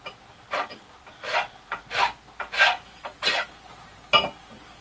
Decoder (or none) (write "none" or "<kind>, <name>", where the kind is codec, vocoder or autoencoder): none